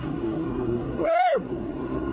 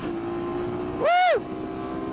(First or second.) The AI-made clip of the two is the first